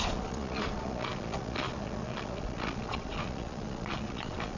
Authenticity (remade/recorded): remade